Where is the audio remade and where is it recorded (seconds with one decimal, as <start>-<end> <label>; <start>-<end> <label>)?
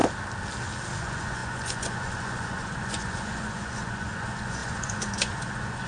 0.0-1.0 recorded; 1.0-5.9 remade